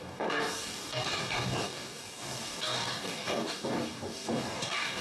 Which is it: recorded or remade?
remade